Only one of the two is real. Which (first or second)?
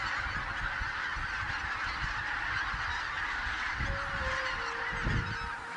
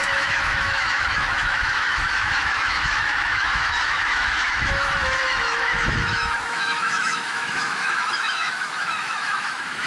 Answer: first